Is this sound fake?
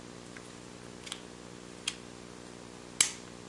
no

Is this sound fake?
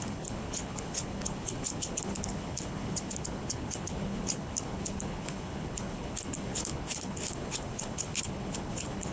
yes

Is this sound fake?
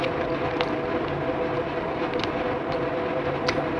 no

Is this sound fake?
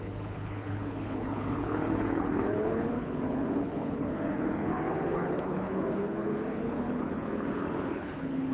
yes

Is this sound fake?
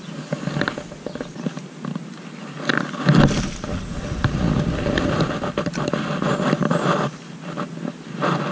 no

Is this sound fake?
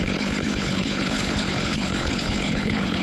yes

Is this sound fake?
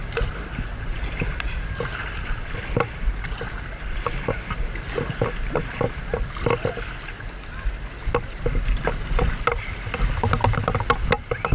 no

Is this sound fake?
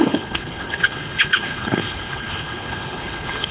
yes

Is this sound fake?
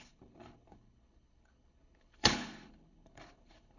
yes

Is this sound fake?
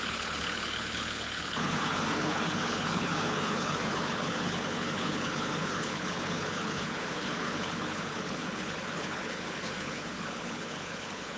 yes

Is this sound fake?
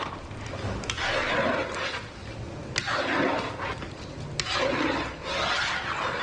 no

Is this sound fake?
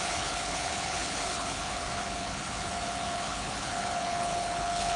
yes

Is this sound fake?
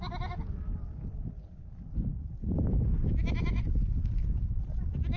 no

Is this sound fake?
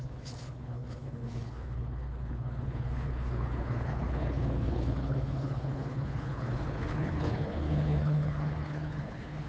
yes